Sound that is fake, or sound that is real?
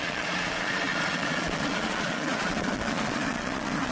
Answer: fake